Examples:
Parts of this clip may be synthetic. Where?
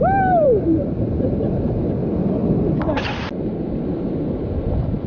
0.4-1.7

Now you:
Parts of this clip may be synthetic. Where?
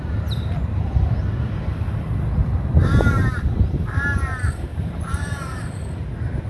2.4-3.8; 4.7-5.6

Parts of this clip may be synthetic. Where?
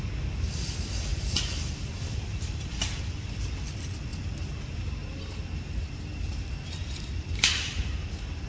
1.1-3.4; 4.1-4.8; 6.8-8.5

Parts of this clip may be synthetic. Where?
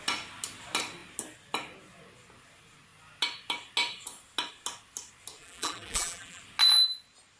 5.4-6.4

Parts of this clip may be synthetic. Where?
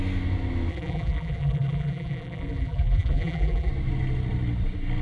0.7-3.7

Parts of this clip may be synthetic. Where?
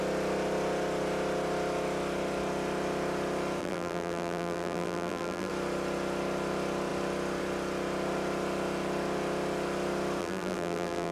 3.6-5.5; 10.2-11.1